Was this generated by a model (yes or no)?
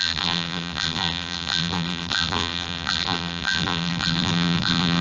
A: yes